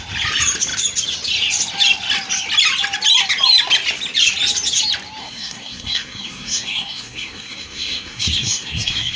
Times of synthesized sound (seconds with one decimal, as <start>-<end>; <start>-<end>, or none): 5.2-9.2